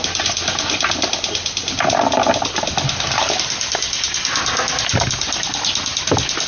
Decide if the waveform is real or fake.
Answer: real